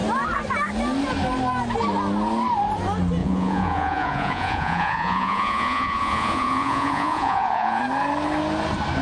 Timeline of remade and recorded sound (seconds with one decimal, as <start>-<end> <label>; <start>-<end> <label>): 0.0-3.2 recorded; 3.2-7.8 remade; 7.8-9.0 recorded

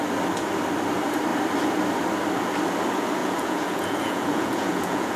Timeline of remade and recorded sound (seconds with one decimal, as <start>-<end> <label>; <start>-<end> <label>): 0.0-3.2 recorded; 3.2-5.2 remade

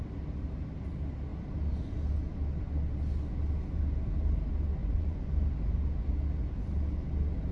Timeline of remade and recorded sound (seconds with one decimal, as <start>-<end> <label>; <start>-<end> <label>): 0.0-4.8 recorded; 4.8-5.3 remade; 5.3-7.5 recorded

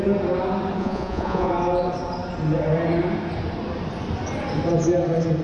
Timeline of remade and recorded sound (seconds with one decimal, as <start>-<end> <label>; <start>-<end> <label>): 0.0-0.8 recorded; 0.8-1.5 remade; 1.5-5.4 recorded

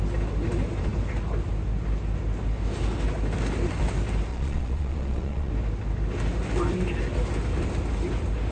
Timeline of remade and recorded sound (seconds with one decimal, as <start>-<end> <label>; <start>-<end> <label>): 0.0-4.3 recorded; 4.3-5.5 remade; 5.5-8.5 recorded